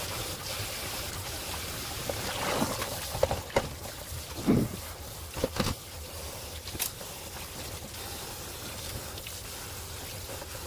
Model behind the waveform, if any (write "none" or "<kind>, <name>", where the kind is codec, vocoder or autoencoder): none